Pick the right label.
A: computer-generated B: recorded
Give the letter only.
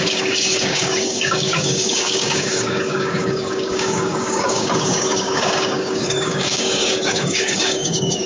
A